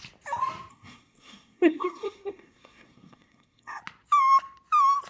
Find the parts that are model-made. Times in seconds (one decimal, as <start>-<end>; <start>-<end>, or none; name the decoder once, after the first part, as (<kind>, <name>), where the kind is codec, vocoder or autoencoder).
0.7-3.8 (codec, SNAC)